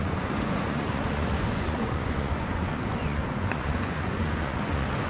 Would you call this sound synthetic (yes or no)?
yes